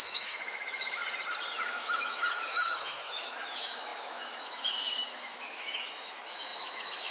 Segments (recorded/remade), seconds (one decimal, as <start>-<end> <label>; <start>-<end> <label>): 0.0-1.0 remade; 1.0-1.6 recorded; 1.6-7.1 remade

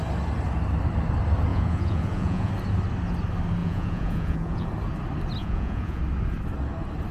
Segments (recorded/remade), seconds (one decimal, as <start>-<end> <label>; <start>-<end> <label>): 0.0-1.5 recorded; 1.5-2.5 remade; 2.5-3.6 recorded; 3.6-4.7 remade; 4.7-5.4 recorded; 5.4-6.0 remade; 6.0-7.1 recorded

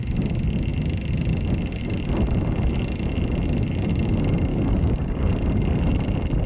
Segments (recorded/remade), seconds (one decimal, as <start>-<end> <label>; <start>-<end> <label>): 0.0-4.5 recorded; 4.5-5.3 remade; 5.3-6.5 recorded

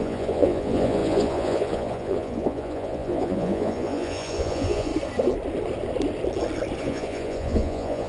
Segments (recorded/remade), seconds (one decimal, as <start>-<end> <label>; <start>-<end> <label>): 0.0-4.9 remade; 4.9-6.8 recorded; 6.8-8.1 remade

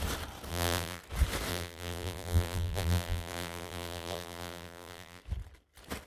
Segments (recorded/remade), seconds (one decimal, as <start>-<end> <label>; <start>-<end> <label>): 0.0-0.5 recorded; 0.5-1.0 remade; 1.0-1.5 recorded; 1.5-5.2 remade; 5.2-6.1 recorded

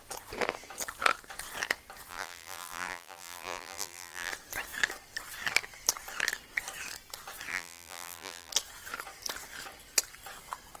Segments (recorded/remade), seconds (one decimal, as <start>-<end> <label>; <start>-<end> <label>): 0.0-2.1 recorded; 2.1-4.3 remade; 4.3-7.5 recorded; 7.5-8.5 remade; 8.5-10.8 recorded

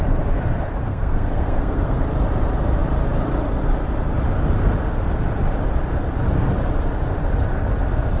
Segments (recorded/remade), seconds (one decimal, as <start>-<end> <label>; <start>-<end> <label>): 0.0-0.8 recorded; 0.8-2.0 remade; 2.0-8.2 recorded

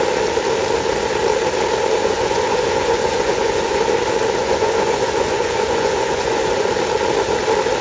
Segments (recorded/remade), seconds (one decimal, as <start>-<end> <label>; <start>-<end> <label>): 0.0-2.0 recorded; 2.0-3.8 remade; 3.8-4.4 recorded; 4.4-6.7 remade; 6.7-7.8 recorded